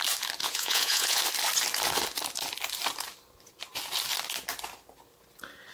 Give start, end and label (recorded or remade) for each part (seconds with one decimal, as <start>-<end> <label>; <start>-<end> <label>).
0.0-0.4 recorded; 0.4-1.2 remade; 1.2-5.7 recorded